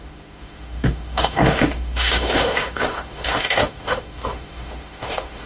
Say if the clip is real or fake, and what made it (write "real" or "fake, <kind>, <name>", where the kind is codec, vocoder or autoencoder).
fake, autoencoder, DAC-VAE